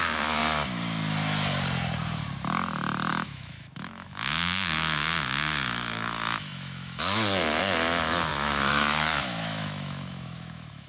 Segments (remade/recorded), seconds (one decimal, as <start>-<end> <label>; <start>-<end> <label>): 0.0-0.4 remade; 0.4-3.1 recorded; 3.1-10.9 remade